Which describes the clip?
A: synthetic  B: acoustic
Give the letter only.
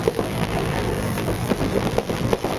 A